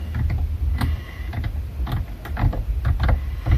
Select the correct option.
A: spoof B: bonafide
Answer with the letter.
B